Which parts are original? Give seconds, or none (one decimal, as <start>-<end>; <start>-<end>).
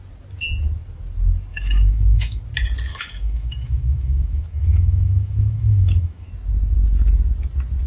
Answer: 0.0-1.5; 2.4-2.9; 6.3-7.9